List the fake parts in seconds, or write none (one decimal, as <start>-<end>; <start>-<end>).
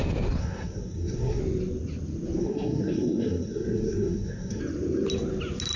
0.4-1.4; 2.4-4.6